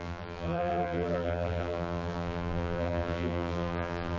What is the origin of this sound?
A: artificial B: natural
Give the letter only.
A